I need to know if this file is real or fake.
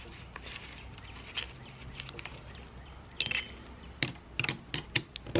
real